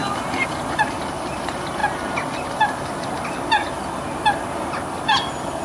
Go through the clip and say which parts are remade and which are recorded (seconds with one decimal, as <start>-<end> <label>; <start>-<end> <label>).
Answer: 0.0-5.6 recorded